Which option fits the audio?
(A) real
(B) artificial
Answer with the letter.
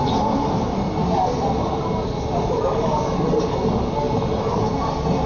A